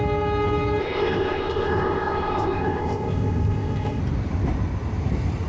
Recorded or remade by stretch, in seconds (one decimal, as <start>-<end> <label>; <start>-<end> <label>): 0.0-0.8 recorded; 0.8-4.0 remade; 4.0-5.5 recorded